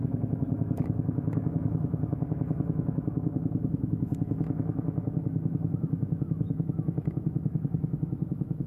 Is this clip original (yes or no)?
no